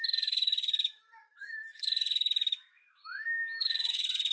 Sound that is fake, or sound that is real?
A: fake